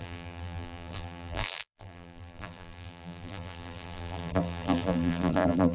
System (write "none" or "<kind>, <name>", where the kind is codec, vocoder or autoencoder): vocoder, BigVGAN v2